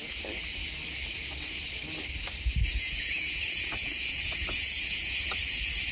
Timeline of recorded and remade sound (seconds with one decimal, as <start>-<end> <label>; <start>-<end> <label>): 0.0-2.7 recorded; 2.7-5.4 remade; 5.4-5.9 recorded